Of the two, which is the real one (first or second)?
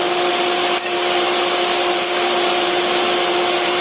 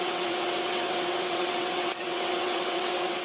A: first